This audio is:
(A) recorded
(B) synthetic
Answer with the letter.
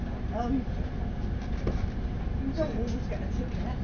A